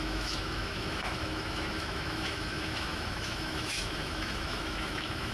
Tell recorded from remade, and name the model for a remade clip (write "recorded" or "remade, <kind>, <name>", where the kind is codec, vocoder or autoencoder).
remade, autoencoder, DAC-VAE